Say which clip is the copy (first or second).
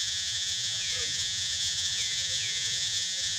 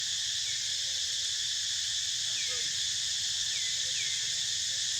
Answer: first